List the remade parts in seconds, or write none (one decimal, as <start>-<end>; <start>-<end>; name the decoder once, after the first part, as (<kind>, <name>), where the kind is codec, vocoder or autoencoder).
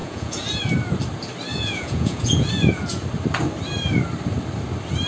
0.0-0.6 (vocoder, Vocos); 1.5-2.5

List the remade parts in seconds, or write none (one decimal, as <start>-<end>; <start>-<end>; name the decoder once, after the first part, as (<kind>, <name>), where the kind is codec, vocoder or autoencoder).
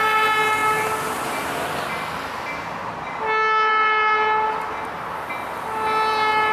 none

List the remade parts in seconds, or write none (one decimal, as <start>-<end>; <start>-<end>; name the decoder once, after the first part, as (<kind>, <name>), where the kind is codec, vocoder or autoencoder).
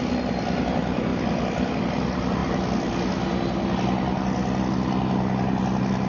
none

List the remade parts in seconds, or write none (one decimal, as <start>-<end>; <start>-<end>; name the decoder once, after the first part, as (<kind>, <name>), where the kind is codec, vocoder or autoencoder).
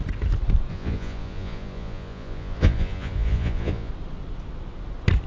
0.7-3.9 (vocoder, Vocos)